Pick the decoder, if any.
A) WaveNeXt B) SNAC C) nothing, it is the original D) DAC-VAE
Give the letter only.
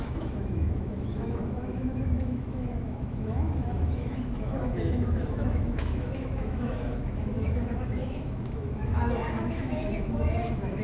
D